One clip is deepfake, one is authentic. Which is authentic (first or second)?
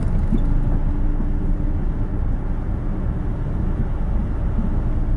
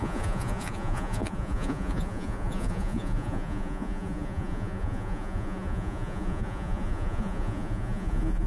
first